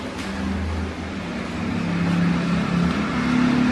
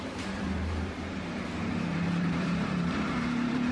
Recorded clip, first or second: first